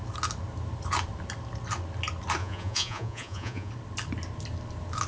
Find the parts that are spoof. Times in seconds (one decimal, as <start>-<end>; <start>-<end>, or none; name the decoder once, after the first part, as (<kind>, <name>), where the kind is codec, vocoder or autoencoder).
2.4-3.7 (vocoder, Vocos)